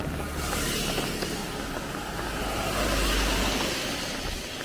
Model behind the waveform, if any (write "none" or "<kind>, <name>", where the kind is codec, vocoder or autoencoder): none